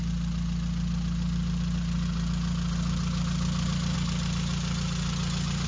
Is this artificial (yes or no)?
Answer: no